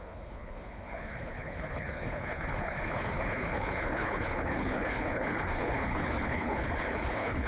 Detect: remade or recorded remade